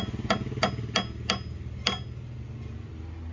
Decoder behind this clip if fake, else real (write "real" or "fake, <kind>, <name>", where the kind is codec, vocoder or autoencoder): real